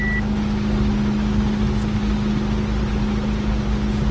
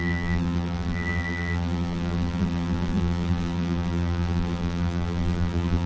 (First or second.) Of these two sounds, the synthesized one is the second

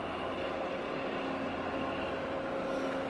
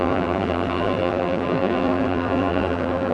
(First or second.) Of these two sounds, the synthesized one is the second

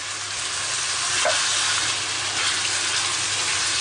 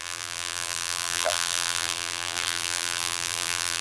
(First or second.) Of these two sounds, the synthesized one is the second